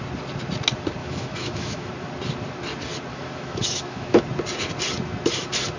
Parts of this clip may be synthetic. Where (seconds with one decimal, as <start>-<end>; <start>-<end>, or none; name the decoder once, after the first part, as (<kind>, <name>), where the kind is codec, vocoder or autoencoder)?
1.0-1.9 (autoencoder, DAC-VAE); 3.1-4.2